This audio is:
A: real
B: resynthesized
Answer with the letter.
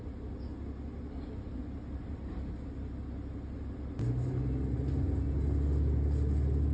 A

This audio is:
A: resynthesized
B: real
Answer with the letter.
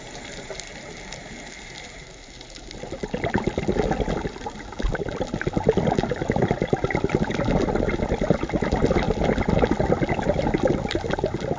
B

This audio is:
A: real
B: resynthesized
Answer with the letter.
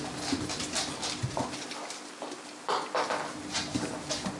A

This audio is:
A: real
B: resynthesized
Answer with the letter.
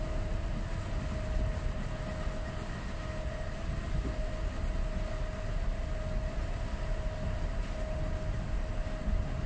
A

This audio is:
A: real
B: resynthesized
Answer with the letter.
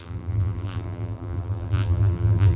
B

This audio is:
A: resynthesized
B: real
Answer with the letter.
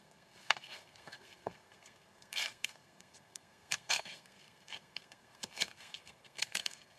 A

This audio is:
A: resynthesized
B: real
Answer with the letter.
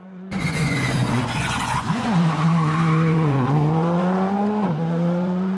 A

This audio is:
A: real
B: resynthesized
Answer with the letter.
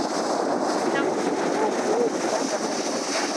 A